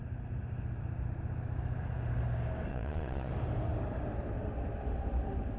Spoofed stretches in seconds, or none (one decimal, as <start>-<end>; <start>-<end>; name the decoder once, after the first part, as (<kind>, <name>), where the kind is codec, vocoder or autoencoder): 2.7-3.3 (vocoder, Vocos)